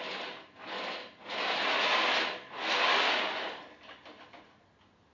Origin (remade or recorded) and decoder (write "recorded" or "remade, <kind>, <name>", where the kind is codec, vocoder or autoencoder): recorded